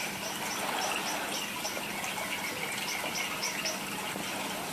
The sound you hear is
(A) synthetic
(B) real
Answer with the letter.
B